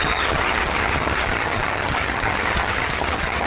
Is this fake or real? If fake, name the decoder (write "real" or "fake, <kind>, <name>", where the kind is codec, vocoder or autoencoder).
fake, vocoder, HiFi-GAN